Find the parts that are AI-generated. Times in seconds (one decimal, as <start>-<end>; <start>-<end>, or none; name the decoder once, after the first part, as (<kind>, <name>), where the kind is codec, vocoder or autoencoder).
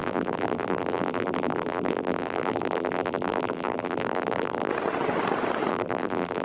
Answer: 0.0-4.7 (vocoder, BigVGAN v2); 5.7-6.4